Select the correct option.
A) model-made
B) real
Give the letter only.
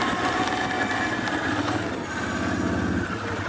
B